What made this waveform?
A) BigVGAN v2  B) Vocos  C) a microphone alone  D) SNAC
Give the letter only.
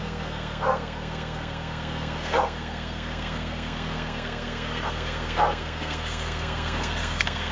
D